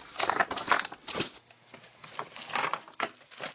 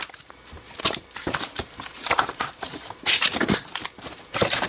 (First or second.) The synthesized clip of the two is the second